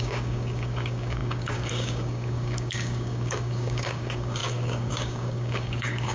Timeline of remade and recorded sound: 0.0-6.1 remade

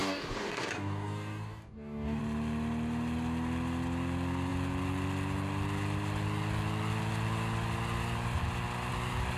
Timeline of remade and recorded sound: 0.0-2.2 remade; 2.2-9.4 recorded

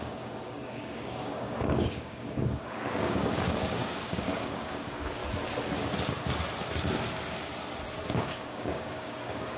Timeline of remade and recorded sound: 0.0-5.2 remade; 5.2-8.1 recorded; 8.1-9.6 remade

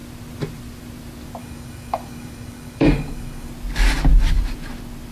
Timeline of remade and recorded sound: 0.0-1.4 recorded; 1.4-3.5 remade; 3.5-5.1 recorded

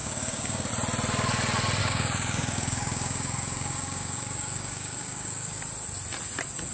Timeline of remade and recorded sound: 0.0-0.7 remade; 0.7-1.8 recorded; 1.8-5.6 remade; 5.6-6.7 recorded

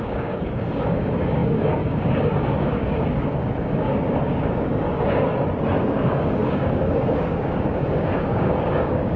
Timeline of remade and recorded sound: 0.0-5.3 remade; 5.3-5.8 recorded; 5.8-9.2 remade

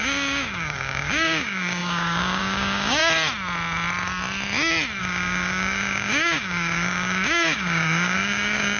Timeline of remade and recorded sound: 0.0-3.0 remade; 3.0-5.0 recorded; 5.0-8.8 remade